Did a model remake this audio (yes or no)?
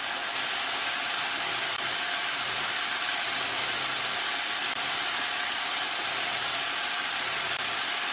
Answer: no